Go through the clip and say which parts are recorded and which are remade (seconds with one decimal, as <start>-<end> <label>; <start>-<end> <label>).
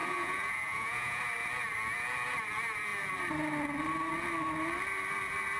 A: 0.0-1.2 remade; 1.2-5.6 recorded